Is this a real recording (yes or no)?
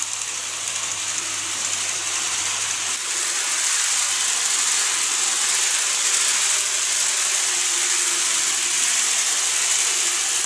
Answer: yes